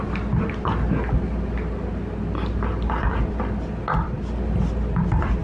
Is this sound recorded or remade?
recorded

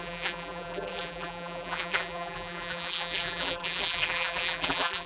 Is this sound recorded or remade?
remade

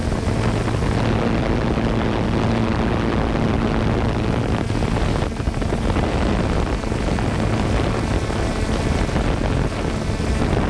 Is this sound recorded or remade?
recorded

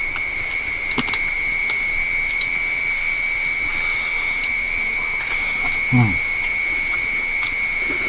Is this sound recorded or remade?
recorded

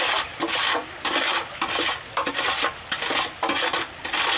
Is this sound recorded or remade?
recorded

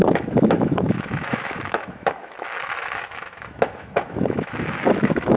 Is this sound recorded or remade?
remade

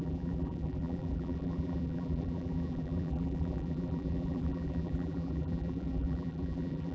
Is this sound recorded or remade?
remade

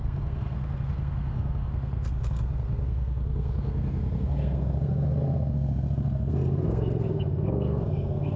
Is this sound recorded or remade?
remade